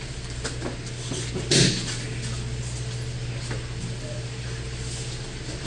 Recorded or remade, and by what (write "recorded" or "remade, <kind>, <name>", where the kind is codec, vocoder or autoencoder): recorded